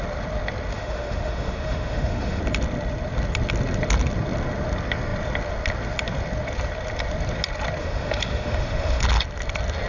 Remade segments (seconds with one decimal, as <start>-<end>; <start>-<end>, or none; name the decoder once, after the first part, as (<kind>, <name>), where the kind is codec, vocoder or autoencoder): 0.7-2.4 (autoencoder, DAC-VAE); 7.8-9.0